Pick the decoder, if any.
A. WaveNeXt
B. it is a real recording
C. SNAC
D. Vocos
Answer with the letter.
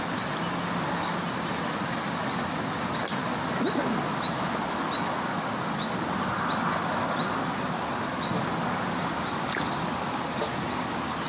B